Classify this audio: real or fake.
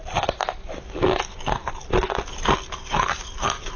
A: real